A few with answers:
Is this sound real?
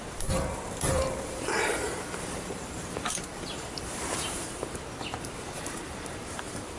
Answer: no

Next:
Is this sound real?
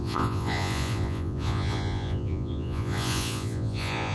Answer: no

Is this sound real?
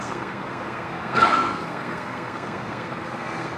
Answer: no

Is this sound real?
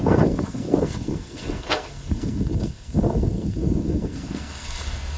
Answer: no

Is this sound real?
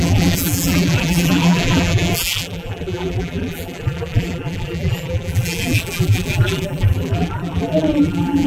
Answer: no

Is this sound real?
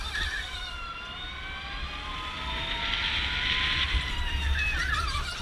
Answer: yes